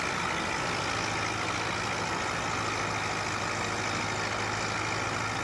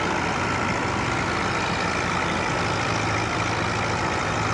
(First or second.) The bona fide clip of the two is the first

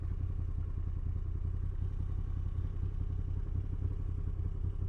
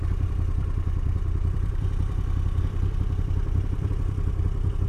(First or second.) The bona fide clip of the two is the first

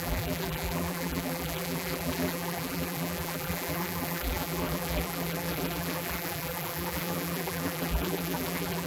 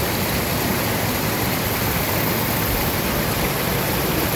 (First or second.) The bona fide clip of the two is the second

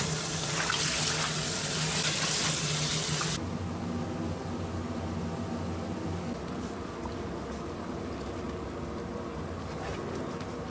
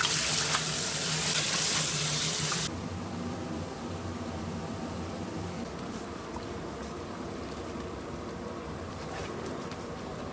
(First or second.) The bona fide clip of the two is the first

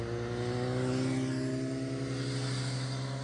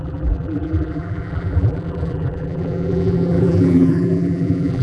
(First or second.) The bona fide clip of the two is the first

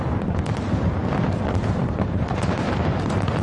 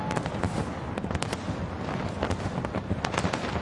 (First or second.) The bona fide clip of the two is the second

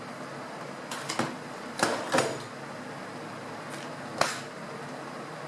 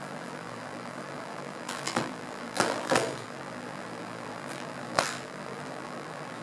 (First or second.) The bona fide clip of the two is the first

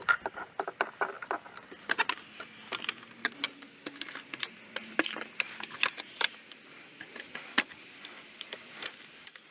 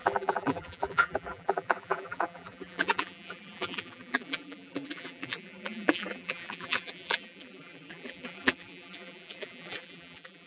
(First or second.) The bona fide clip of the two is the first